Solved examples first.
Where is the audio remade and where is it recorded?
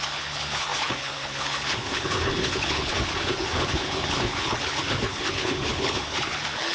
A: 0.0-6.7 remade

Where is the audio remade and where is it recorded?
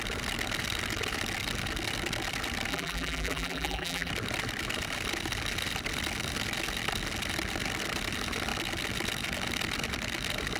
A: 0.0-2.7 recorded; 2.7-4.1 remade; 4.1-10.6 recorded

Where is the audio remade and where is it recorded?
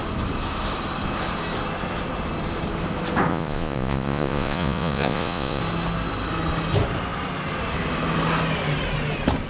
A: 0.0-3.3 recorded; 3.3-5.6 remade; 5.6-9.5 recorded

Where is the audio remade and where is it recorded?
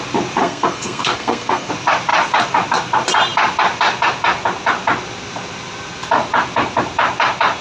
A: 0.0-0.4 recorded; 0.4-1.7 remade; 1.7-7.6 recorded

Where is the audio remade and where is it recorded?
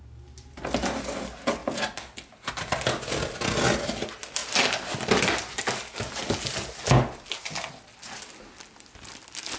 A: 0.0-9.6 recorded